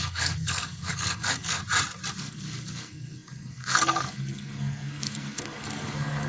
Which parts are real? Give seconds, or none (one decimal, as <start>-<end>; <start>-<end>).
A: 1.6-2.2